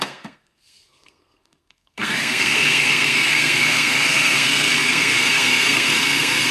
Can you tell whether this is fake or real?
fake